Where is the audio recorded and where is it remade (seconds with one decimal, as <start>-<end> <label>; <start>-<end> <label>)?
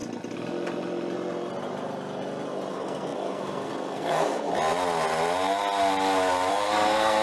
0.0-2.7 recorded; 2.7-4.5 remade; 4.5-6.5 recorded; 6.5-7.2 remade